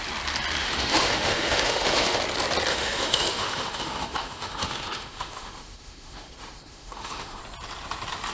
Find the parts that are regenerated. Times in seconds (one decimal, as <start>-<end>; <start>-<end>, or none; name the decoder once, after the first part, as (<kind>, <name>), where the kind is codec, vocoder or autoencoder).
0.6-2.2 (autoencoder, DAC-VAE); 2.7-7.4